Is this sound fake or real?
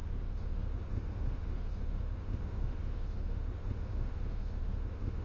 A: fake